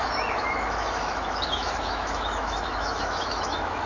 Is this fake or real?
fake